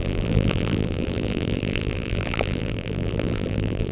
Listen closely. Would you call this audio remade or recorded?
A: remade